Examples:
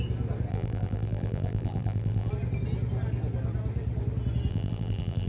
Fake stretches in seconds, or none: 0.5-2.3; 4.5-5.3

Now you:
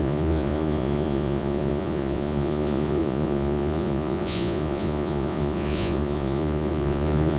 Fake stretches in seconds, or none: 0.0-7.4

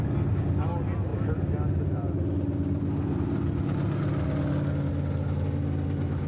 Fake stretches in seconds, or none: none

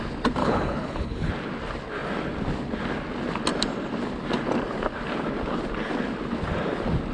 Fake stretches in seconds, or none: 0.4-1.3

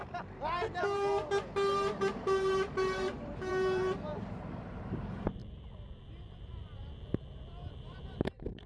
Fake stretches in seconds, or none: 0.0-8.7

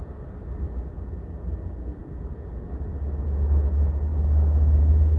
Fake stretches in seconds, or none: none